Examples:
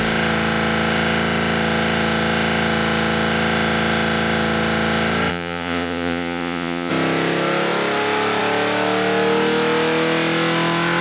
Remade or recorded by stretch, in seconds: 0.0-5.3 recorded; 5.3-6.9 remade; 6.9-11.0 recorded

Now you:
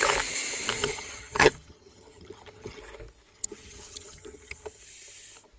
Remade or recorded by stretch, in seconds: 0.0-0.8 recorded; 0.8-2.8 remade; 2.8-3.3 recorded; 3.3-4.8 remade; 4.8-5.6 recorded

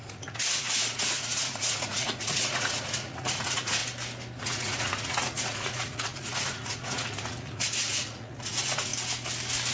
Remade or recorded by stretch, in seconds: 0.0-3.8 remade; 3.8-4.4 recorded; 4.4-8.9 remade; 8.9-9.7 recorded

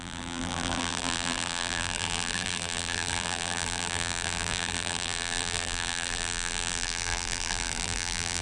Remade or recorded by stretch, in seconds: 0.0-8.4 remade

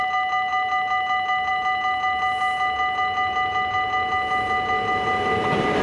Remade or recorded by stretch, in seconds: 0.0-5.8 recorded

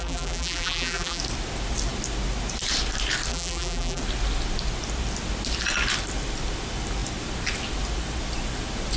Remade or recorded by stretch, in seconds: 0.0-1.2 remade; 1.2-3.3 recorded; 3.3-4.0 remade; 4.0-9.0 recorded